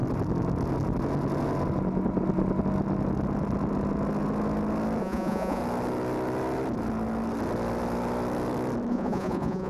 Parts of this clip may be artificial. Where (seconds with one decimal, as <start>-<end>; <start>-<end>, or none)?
5.0-5.6; 8.9-9.7

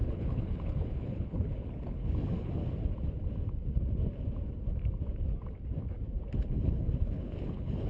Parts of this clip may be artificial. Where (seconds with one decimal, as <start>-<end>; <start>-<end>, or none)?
0.0-2.6; 6.4-7.9

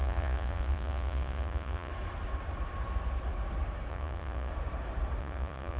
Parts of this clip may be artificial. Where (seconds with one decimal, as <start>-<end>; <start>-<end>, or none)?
0.0-1.9; 3.9-4.5; 5.2-5.8

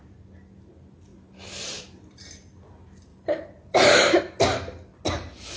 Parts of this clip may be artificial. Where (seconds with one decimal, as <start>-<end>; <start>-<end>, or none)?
3.1-4.2

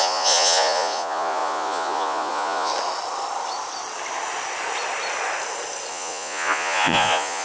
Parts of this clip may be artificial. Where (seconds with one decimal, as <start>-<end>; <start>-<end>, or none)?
0.0-2.7; 5.9-7.4

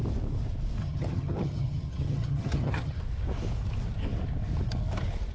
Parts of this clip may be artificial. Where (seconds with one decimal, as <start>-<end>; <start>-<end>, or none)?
0.8-3.0